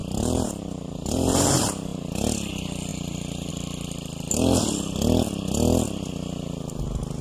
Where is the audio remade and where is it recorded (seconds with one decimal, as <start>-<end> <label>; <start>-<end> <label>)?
0.0-1.5 remade; 1.5-1.9 recorded; 1.9-2.5 remade; 2.5-2.9 recorded; 2.9-3.5 remade; 3.5-7.2 recorded